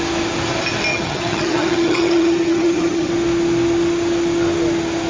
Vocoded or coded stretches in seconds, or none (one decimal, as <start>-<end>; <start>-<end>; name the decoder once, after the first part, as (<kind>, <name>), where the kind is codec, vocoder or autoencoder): 0.9-3.1 (vocoder, HiFi-GAN)